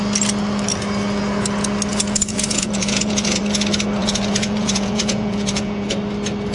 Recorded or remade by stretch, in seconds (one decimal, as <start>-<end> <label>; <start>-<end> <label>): 0.0-1.9 recorded; 1.9-3.4 remade; 3.4-4.0 recorded; 4.0-5.9 remade; 5.9-6.5 recorded

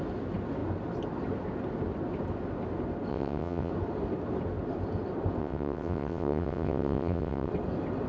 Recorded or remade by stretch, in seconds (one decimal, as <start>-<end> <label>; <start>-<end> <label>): 0.0-3.1 recorded; 3.1-3.7 remade; 3.7-5.4 recorded; 5.4-7.5 remade; 7.5-8.1 recorded

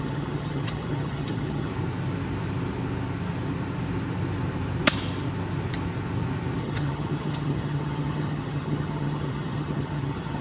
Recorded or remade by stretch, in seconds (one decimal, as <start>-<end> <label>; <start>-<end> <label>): 0.0-1.7 remade; 1.7-6.6 recorded; 6.6-10.4 remade

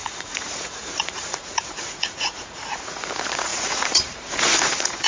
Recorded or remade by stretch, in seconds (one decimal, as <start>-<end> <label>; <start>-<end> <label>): 0.0-5.1 remade

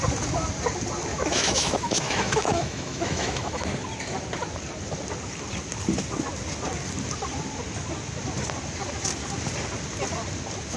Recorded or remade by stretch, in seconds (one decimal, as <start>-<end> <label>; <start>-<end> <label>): 0.0-1.1 recorded; 1.1-3.6 remade; 3.6-10.8 recorded

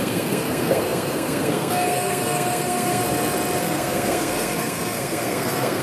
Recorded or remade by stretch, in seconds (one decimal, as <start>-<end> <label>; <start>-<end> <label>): 0.0-3.0 remade; 3.0-3.6 recorded; 3.6-5.8 remade

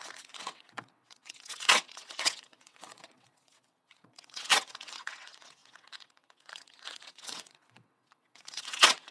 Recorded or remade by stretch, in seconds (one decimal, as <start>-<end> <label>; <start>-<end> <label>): 0.0-9.1 remade